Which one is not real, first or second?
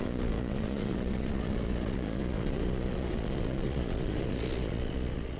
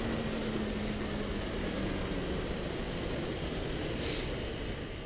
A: first